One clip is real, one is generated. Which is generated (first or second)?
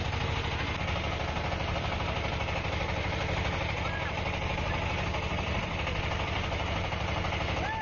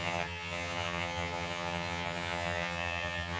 second